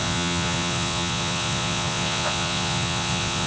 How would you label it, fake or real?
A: fake